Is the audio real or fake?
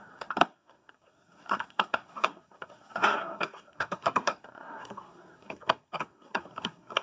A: fake